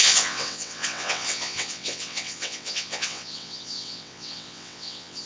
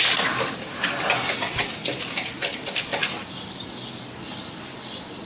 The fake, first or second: first